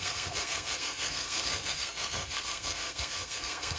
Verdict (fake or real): fake